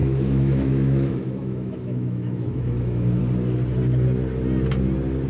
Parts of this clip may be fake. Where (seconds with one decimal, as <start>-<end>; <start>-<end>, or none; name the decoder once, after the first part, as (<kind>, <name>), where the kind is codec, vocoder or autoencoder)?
0.0-3.2 (autoencoder, DAC-VAE)